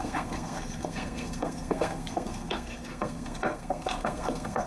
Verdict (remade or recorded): remade